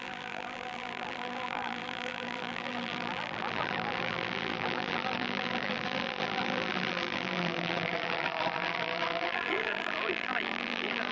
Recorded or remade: remade